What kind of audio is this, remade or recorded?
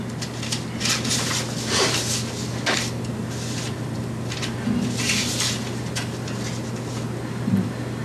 recorded